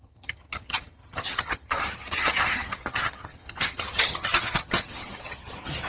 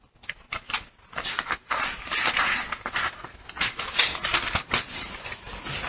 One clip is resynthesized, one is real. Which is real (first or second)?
second